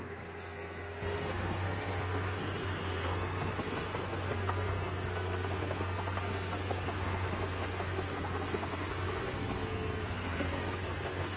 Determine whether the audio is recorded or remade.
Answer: remade